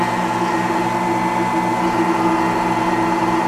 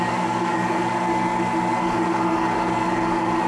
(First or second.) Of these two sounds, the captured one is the first